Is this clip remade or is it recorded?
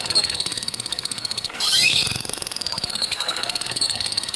remade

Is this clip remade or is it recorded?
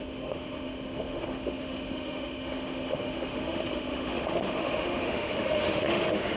remade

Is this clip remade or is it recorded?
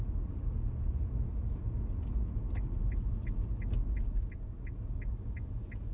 recorded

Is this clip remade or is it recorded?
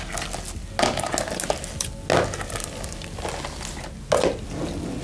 recorded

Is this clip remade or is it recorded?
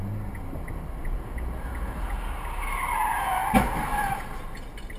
recorded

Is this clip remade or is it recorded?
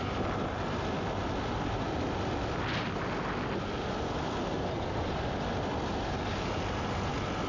recorded